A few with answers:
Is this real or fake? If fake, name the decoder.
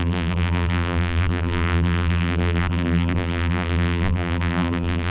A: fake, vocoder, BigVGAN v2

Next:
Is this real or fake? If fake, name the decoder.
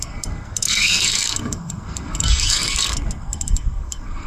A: fake, codec, SNAC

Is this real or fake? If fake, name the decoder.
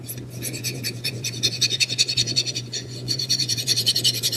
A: fake, vocoder, Vocos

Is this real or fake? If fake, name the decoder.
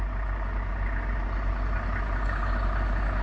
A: real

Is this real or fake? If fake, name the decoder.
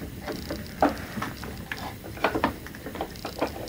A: fake, vocoder, BigVGAN v2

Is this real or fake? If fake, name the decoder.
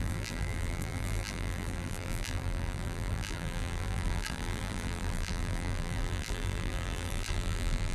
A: fake, vocoder, BigVGAN v2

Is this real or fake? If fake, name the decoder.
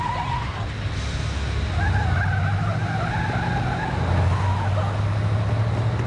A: real